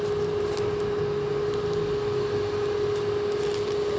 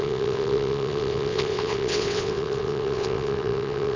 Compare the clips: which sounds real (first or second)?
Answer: first